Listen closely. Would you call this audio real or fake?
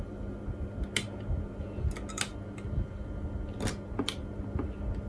real